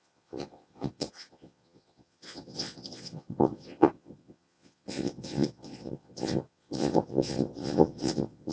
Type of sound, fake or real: fake